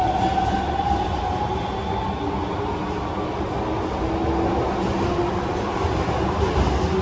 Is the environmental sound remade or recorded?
recorded